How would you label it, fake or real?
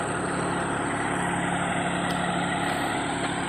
real